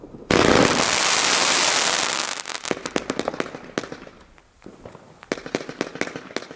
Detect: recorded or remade recorded